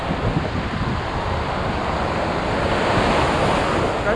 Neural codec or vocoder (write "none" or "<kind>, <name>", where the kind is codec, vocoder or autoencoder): none